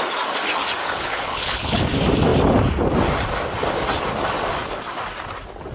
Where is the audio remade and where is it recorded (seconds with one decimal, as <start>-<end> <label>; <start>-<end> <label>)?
0.0-0.8 recorded; 0.8-1.8 remade; 1.8-5.7 recorded